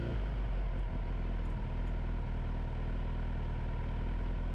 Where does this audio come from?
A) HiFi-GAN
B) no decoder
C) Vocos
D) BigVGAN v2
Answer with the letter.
B